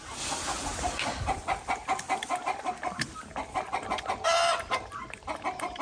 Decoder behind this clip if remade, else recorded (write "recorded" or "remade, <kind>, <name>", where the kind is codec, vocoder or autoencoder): recorded